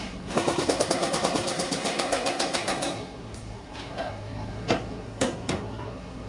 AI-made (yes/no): yes